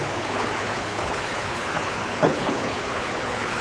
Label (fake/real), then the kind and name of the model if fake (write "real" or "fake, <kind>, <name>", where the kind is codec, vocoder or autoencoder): fake, codec, HILCodec